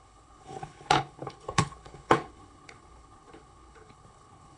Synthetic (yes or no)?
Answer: yes